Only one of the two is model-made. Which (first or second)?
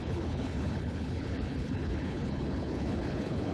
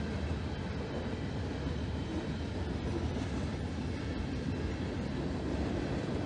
first